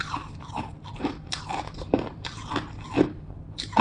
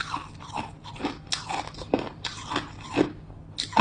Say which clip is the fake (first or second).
first